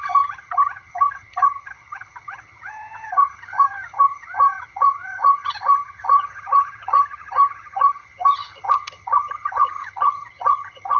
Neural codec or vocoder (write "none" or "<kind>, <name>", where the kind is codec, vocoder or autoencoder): vocoder, HiFi-GAN